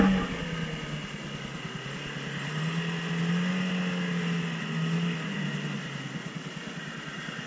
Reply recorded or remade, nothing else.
recorded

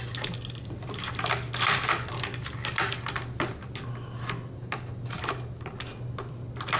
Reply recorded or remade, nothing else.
recorded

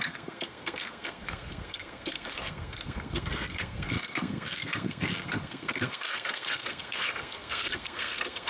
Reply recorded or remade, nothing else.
remade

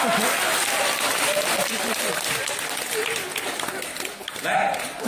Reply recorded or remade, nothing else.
remade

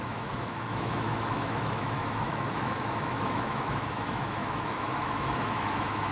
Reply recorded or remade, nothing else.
remade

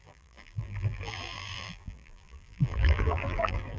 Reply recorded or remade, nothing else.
remade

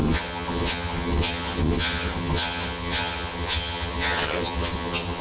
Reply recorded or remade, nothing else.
remade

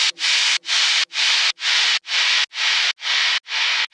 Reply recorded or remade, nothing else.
recorded